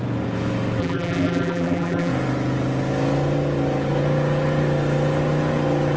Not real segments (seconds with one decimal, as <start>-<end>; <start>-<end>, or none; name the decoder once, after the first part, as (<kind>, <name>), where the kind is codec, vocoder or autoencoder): 0.8-2.1 (vocoder, BigVGAN v2)